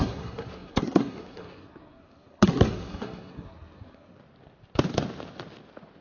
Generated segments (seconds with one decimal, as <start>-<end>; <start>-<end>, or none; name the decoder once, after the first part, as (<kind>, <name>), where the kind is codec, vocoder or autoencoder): 0.0-4.2 (codec, SNAC)